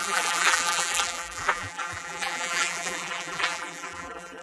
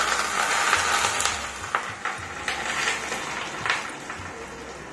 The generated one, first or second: first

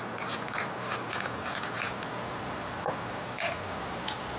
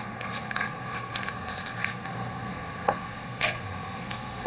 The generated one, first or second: second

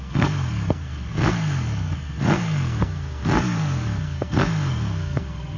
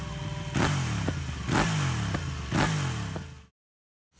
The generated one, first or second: first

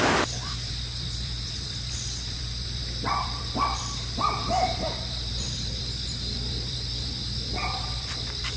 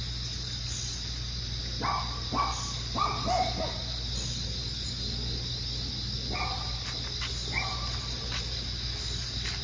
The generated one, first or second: first